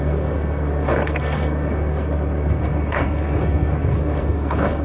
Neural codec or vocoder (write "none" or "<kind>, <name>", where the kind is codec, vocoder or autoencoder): codec, SNAC